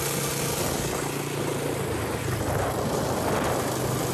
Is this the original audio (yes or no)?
yes